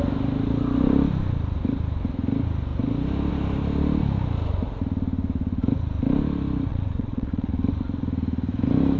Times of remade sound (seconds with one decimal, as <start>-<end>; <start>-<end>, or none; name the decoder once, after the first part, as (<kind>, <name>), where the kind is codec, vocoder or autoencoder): 6.7-7.5 (vocoder, WaveNeXt)